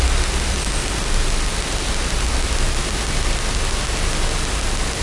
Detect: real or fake real